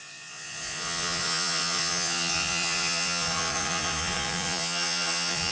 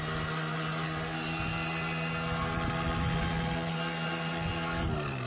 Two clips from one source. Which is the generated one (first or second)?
first